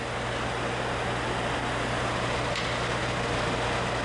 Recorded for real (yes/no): yes